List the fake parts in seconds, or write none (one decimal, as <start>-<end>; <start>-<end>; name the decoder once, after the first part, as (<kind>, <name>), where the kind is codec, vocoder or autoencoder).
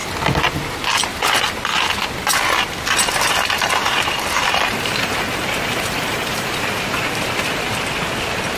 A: 3.8-7.7 (vocoder, BigVGAN v2)